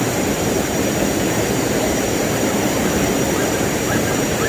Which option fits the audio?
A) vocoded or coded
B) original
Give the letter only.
A